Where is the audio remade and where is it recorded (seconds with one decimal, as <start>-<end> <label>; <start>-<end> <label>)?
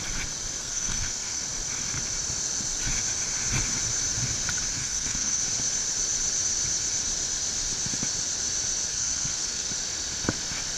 0.0-0.6 recorded; 0.6-1.4 remade; 1.4-4.7 recorded; 4.7-5.4 remade; 5.4-8.9 recorded; 8.9-9.7 remade; 9.7-10.8 recorded